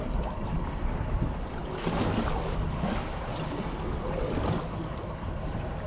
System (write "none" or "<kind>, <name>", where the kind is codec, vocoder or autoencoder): none